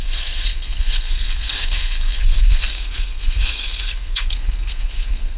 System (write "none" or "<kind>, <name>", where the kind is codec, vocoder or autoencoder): codec, SNAC